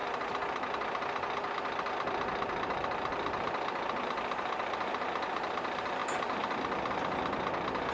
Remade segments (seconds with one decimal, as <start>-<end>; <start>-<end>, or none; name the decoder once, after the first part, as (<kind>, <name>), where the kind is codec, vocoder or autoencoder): none